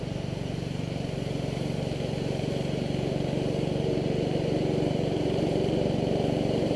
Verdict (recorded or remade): remade